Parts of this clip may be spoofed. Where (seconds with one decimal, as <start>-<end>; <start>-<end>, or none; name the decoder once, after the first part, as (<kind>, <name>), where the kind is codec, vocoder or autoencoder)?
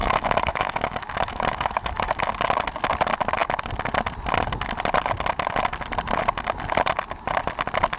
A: 0.0-2.3 (autoencoder, DAC-VAE)